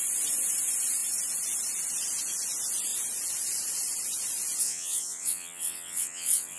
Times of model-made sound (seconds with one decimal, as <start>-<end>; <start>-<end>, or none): 4.6-6.6